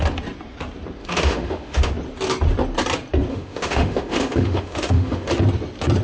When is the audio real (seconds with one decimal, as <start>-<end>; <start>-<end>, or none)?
0.0-1.0; 1.9-3.3; 5.3-6.0